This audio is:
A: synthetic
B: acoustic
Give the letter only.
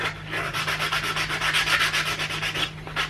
B